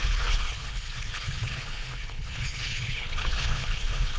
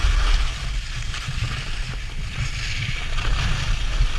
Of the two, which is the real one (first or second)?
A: second